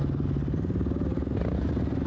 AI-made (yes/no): no